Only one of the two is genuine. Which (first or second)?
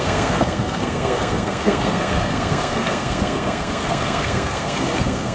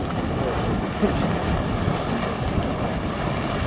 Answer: second